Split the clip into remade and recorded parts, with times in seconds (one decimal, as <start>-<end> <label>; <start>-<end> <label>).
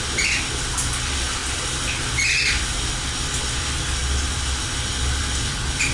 0.0-5.9 recorded